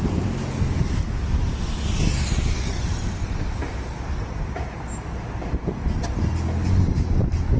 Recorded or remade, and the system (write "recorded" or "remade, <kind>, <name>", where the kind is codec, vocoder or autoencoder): recorded